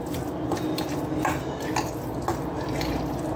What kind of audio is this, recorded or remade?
recorded